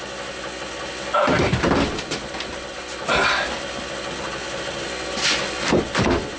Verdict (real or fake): real